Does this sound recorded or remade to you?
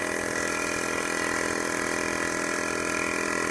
recorded